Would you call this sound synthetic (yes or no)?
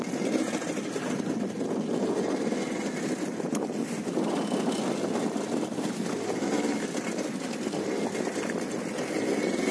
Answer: no